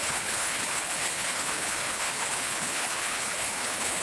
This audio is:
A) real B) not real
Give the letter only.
B